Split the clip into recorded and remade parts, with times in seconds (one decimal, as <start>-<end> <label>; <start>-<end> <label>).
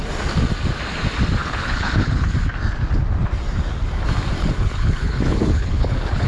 0.0-1.4 recorded; 1.4-2.3 remade; 2.3-4.4 recorded; 4.4-6.3 remade